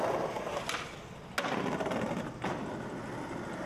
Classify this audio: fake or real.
real